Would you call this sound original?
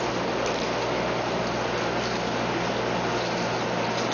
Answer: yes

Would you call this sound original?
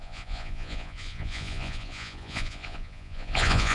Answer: no